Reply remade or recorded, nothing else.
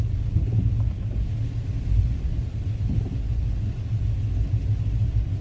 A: recorded